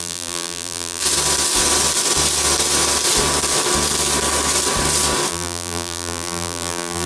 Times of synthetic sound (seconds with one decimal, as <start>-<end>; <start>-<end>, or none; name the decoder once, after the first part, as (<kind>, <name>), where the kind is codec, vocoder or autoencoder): 0.0-1.0 (vocoder, BigVGAN v2); 5.3-7.1